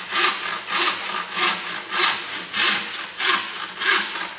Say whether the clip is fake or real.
real